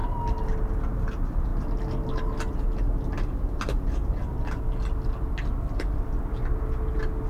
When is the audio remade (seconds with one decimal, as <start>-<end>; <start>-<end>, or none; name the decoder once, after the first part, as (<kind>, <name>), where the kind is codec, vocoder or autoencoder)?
none